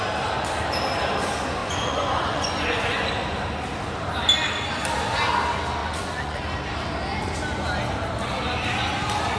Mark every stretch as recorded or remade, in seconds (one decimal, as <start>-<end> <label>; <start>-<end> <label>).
0.0-1.6 recorded; 1.6-3.1 remade; 3.1-5.8 recorded; 5.8-6.4 remade; 6.4-9.4 recorded